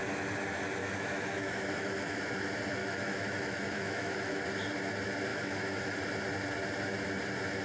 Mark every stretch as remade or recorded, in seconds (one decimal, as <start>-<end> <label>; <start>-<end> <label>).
0.0-0.8 recorded; 0.8-2.2 remade; 2.2-2.8 recorded; 2.8-4.4 remade; 4.4-5.3 recorded; 5.3-6.0 remade; 6.0-7.6 recorded